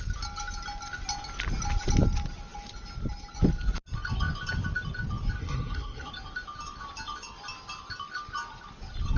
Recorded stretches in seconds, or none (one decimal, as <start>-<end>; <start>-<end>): 0.0-5.4; 6.1-9.2